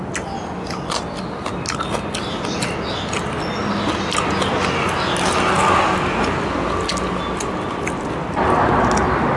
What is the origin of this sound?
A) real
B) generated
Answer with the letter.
A